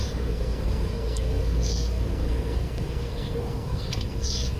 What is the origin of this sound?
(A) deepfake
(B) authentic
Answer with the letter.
A